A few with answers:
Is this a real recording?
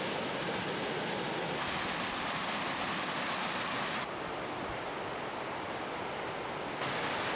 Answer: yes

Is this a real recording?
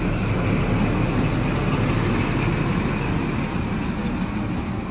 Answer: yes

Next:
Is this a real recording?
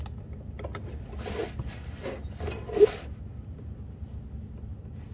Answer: yes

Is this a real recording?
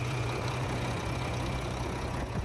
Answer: no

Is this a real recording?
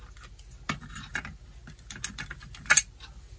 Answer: yes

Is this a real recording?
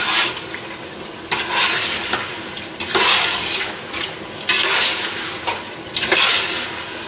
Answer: yes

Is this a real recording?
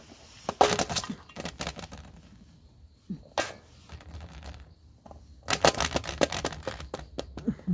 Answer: yes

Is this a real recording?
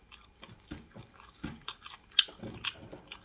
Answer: yes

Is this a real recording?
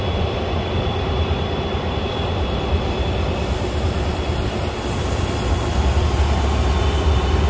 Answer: yes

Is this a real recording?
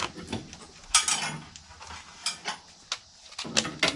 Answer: yes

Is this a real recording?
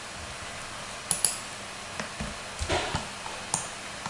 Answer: yes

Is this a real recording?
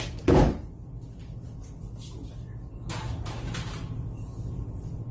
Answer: no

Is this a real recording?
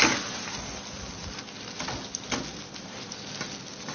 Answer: yes